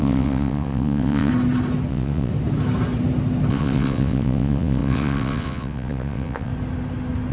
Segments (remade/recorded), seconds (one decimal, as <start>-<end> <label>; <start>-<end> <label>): 0.0-1.3 remade; 1.3-1.9 recorded; 1.9-2.3 remade; 2.3-3.5 recorded; 3.5-6.5 remade; 6.5-7.3 recorded